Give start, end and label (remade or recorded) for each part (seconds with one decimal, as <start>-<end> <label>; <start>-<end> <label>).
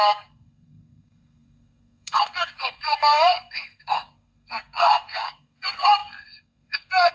0.0-7.1 remade